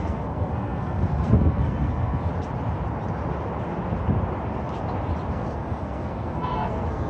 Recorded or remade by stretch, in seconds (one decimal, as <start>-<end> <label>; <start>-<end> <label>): 0.0-2.3 remade; 2.3-5.3 recorded; 5.3-7.1 remade